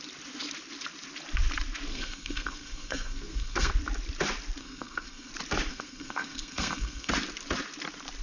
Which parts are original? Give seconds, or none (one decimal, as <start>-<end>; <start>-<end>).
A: 0.0-1.9; 3.7-4.6; 5.3-5.7; 7.1-8.2